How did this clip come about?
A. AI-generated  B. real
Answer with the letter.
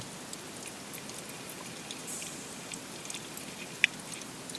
B